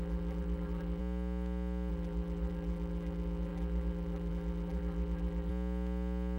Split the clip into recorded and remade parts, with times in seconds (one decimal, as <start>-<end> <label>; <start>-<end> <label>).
0.0-1.0 remade; 1.0-1.9 recorded; 1.9-5.5 remade; 5.5-6.4 recorded